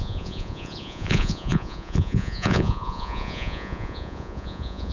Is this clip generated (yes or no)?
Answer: yes